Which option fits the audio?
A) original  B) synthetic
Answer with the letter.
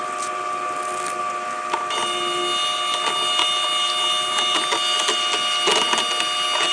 A